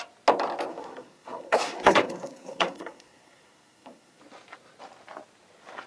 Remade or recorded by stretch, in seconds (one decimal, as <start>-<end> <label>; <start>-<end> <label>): 0.0-0.7 recorded; 0.7-4.2 remade; 4.2-5.9 recorded